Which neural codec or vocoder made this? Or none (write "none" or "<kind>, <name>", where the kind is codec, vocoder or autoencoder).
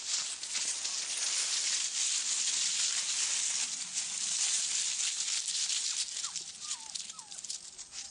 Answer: none